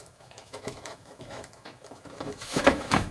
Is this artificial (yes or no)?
yes